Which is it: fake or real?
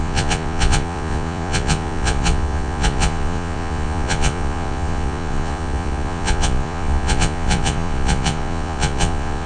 fake